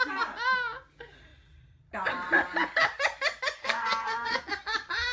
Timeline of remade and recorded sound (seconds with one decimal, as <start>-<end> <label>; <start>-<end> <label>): 0.0-3.6 recorded; 3.6-4.4 remade; 4.4-5.1 recorded